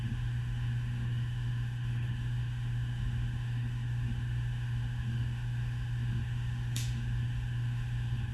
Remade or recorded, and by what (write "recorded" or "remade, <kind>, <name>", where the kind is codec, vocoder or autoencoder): remade, autoencoder, DAC-VAE